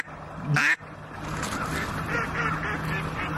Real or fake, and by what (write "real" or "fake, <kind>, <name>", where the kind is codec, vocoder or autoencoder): real